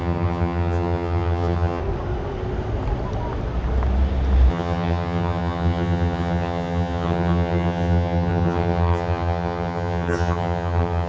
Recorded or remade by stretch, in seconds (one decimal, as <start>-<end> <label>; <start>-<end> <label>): 0.0-1.8 remade; 1.8-4.5 recorded; 4.5-11.1 remade